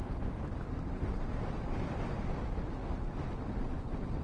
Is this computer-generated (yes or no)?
no